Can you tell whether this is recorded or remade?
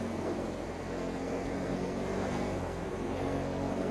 remade